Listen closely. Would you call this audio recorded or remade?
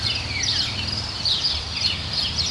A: recorded